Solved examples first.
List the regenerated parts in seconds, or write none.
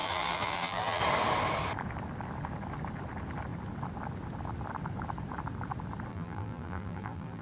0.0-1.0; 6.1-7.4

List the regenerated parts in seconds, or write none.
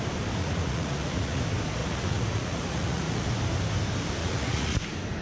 0.4-1.4; 1.8-3.3; 4.2-4.8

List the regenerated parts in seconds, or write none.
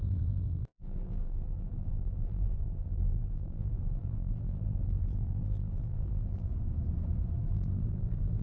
0.0-6.5; 7.4-8.4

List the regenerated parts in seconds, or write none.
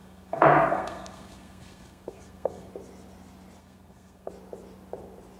0.0-2.7; 3.6-4.3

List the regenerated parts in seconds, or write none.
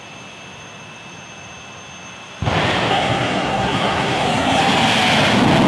2.9-4.6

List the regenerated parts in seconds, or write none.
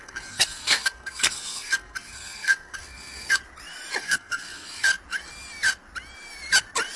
0.0-3.4; 4.0-4.9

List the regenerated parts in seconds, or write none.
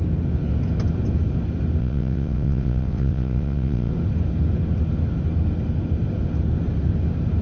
1.8-3.9